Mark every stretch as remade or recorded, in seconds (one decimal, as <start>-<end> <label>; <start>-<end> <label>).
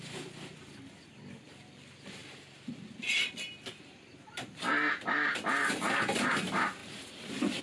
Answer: 0.0-2.2 recorded; 2.2-3.5 remade; 3.5-6.8 recorded; 6.8-7.6 remade